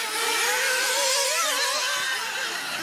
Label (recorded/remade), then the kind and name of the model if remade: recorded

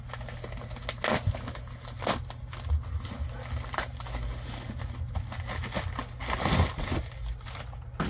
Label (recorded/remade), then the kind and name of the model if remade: recorded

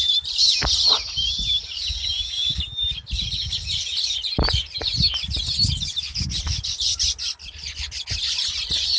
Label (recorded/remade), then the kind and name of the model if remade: recorded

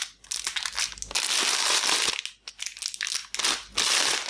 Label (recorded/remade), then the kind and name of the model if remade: recorded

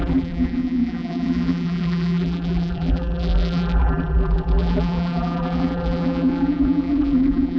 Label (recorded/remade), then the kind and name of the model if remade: remade, vocoder, BigVGAN v2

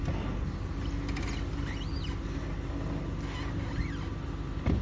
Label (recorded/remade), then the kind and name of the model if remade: recorded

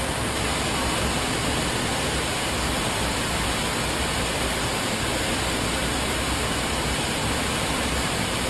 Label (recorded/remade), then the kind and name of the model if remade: recorded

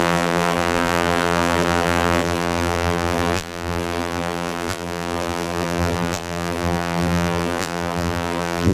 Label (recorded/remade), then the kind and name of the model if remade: remade, vocoder, BigVGAN v2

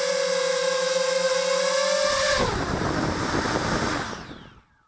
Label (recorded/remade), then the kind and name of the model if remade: recorded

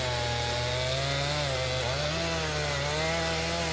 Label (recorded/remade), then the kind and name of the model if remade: recorded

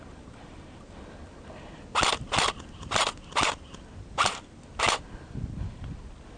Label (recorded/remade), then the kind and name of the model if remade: recorded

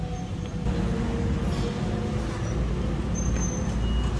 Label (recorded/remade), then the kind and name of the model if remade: recorded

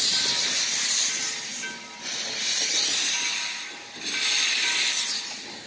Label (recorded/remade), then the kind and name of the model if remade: recorded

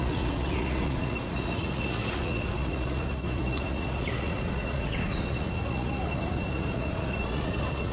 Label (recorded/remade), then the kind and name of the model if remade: remade, vocoder, Vocos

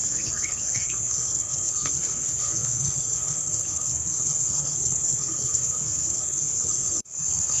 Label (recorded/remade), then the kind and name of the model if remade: remade, codec, SNAC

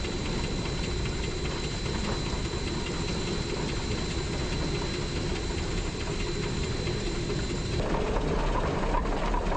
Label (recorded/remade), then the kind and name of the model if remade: recorded